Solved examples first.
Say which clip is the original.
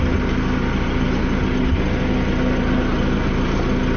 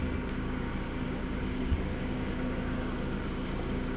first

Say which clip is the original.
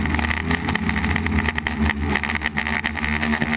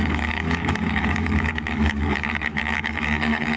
first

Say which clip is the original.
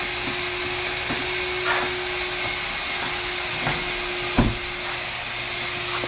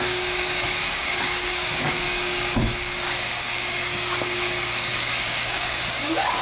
first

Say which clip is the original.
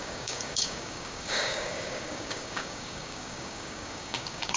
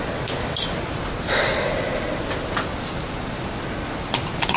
second